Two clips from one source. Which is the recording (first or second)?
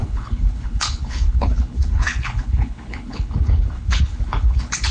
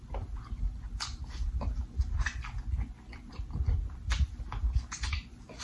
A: second